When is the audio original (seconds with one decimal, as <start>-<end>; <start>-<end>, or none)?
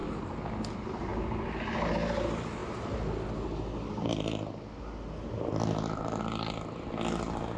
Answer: 0.0-7.6